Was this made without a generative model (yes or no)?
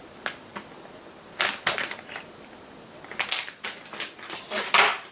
yes